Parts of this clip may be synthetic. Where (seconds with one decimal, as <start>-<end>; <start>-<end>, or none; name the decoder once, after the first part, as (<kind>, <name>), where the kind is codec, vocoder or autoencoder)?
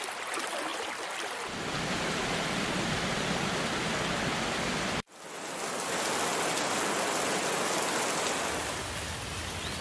none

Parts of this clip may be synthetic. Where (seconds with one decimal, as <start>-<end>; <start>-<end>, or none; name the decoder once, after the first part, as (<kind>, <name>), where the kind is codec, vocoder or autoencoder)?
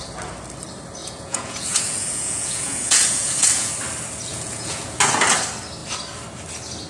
1.0-3.7 (vocoder, Vocos); 4.3-5.0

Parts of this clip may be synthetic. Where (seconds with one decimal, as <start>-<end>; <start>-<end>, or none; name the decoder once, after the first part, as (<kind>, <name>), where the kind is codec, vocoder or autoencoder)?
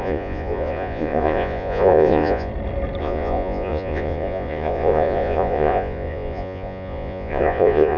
0.0-2.5 (vocoder, Vocos); 3.0-8.0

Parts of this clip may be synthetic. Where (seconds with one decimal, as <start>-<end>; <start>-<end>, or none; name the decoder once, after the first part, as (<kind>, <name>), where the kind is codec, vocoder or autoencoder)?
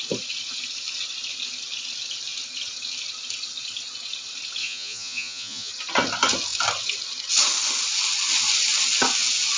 4.6-5.7 (vocoder, Vocos)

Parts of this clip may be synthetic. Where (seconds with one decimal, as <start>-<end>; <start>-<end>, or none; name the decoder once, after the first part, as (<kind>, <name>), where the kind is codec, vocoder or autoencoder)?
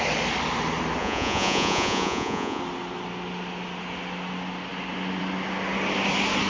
1.0-2.6 (vocoder, Vocos)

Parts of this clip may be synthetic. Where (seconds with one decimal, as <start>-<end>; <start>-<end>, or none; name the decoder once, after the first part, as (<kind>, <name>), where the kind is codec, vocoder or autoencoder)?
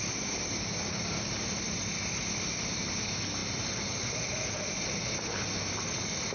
none